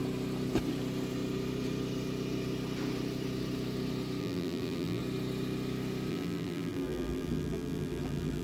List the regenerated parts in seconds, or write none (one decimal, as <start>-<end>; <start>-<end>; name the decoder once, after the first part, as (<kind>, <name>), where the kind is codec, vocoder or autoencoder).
4.2-5.0 (vocoder, BigVGAN v2); 6.1-8.4